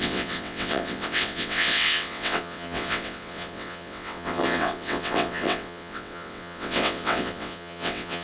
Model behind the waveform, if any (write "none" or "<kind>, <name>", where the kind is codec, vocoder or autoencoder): vocoder, WaveNeXt